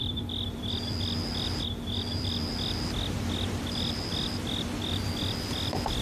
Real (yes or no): no